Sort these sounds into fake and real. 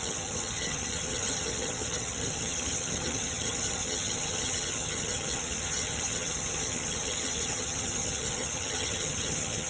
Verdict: fake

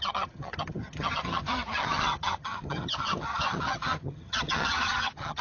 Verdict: fake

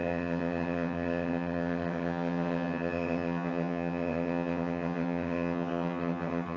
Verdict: fake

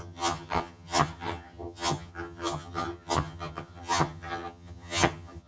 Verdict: fake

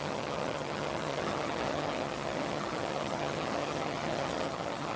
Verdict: fake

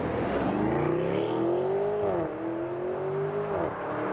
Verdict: real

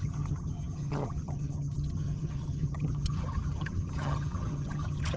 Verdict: fake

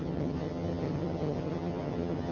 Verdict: fake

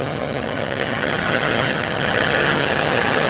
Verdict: fake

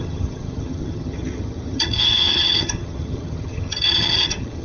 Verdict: fake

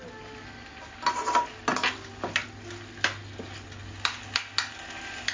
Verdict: real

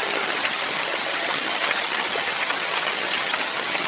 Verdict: fake